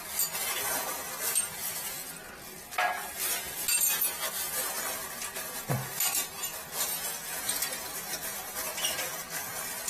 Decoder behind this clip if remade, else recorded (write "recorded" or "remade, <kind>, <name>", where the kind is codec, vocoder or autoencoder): recorded